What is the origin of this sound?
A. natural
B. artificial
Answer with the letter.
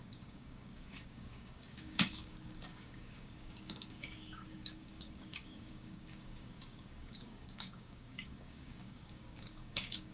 B